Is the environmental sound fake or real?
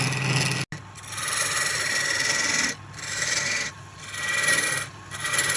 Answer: real